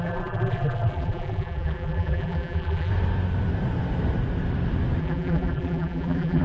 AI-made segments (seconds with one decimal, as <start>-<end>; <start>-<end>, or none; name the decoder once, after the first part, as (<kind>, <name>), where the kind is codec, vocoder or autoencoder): 0.0-2.9 (vocoder, BigVGAN v2); 5.0-6.4